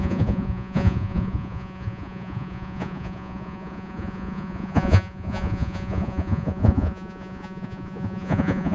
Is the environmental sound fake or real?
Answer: fake